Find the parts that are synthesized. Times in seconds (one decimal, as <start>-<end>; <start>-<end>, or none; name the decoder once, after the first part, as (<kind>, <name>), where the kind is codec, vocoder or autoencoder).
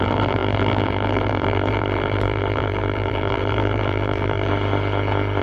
0.0-4.5 (vocoder, BigVGAN v2)